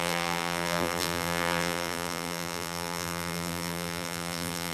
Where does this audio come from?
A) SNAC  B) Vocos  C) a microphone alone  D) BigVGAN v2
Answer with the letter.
D